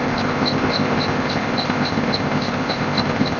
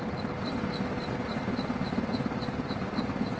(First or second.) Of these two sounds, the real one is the second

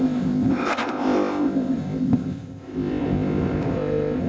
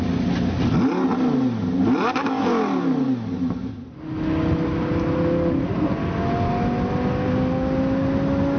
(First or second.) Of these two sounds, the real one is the second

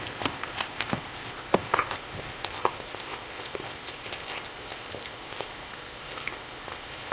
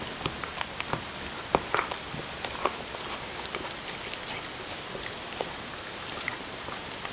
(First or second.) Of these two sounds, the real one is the second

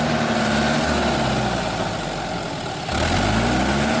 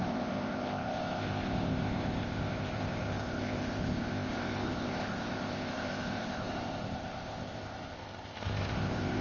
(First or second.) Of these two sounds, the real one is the first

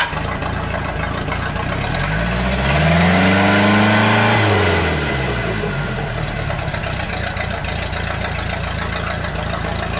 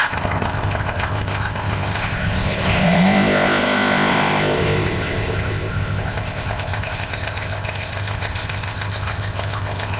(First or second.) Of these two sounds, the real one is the first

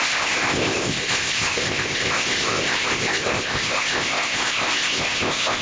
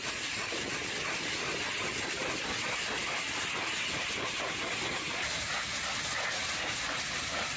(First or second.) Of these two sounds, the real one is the second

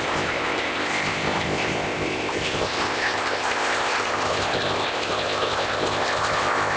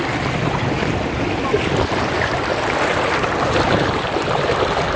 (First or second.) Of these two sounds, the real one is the second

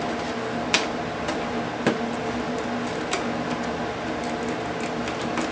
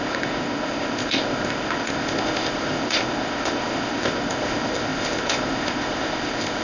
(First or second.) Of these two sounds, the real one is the first